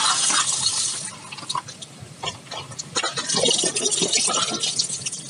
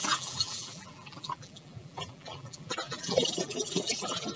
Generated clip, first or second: second